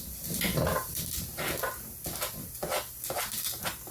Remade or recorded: recorded